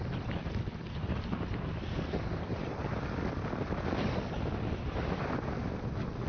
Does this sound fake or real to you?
real